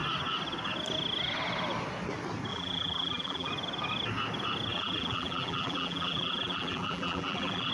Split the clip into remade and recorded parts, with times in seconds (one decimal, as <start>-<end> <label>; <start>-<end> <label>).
0.0-2.5 recorded; 2.5-3.5 remade; 3.5-4.7 recorded; 4.7-7.7 remade